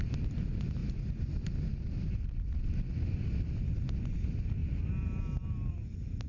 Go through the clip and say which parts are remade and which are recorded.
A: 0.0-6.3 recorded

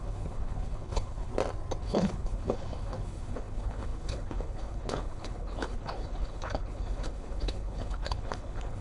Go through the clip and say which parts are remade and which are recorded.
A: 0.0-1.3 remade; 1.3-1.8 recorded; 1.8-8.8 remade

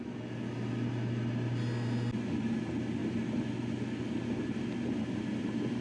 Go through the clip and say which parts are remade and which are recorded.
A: 0.0-5.8 recorded